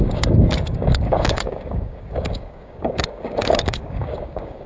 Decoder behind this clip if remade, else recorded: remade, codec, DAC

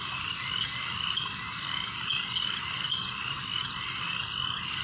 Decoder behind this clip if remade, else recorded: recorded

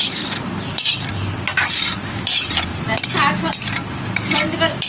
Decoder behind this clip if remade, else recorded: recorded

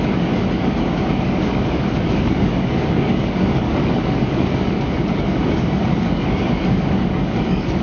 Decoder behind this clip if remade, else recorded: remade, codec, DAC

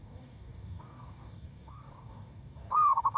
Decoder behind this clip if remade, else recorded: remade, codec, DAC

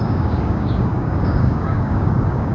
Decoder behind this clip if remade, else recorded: remade, codec, DAC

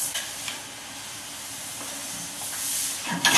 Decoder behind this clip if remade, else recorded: recorded